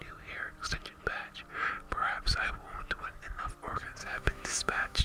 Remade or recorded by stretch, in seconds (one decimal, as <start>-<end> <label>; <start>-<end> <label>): 0.0-4.0 recorded; 4.0-5.0 remade